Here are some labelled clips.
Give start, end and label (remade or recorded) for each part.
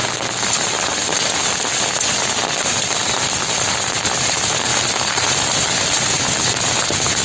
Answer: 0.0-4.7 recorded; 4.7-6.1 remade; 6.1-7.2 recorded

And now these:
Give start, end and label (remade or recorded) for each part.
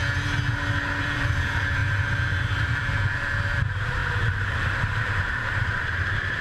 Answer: 0.0-1.0 recorded; 1.0-6.4 remade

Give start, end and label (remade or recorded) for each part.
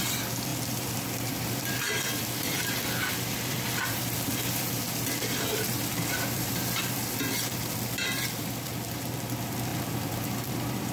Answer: 0.0-10.9 remade